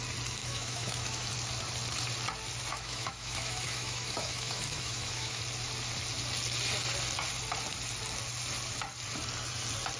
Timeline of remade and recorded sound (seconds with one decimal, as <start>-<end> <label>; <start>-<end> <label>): 0.0-0.4 recorded; 0.4-1.3 remade; 1.3-2.7 recorded; 2.7-5.4 remade; 5.4-10.0 recorded